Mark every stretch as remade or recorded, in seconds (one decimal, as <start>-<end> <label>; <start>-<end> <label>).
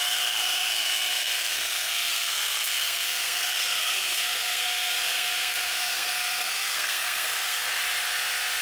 0.0-7.8 remade; 7.8-8.6 recorded